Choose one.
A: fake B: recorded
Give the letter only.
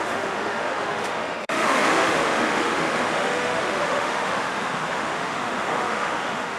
A